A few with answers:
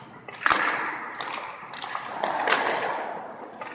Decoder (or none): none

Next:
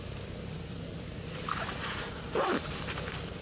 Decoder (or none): vocoder, BigVGAN v2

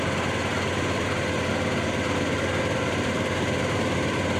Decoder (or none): none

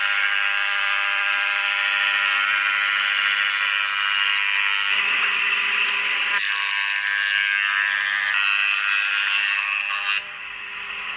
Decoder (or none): none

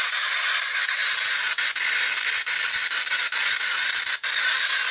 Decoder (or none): none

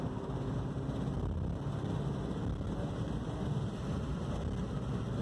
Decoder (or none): none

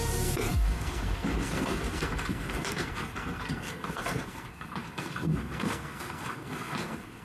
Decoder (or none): codec, SNAC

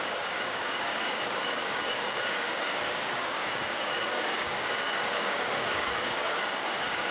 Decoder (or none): codec, DAC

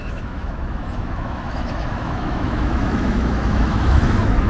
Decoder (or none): autoencoder, DAC-VAE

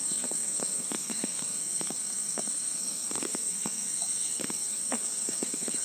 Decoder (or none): codec, SNAC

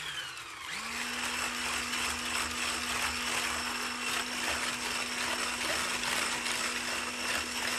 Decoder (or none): none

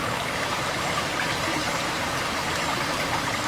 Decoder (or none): vocoder, BigVGAN v2